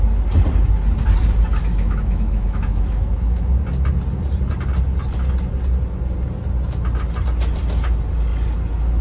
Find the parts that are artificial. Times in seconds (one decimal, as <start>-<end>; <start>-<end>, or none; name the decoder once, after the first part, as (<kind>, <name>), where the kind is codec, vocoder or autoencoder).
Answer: 1.7-3.5 (autoencoder, DAC-VAE)